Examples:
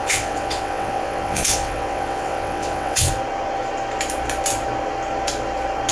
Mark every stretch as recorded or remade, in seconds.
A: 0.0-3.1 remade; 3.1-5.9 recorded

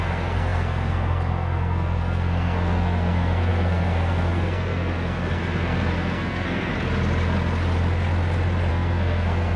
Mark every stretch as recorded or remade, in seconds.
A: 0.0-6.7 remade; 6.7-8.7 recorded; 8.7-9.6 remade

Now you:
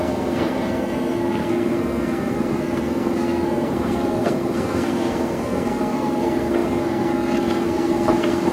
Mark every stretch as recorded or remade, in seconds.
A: 0.0-8.5 remade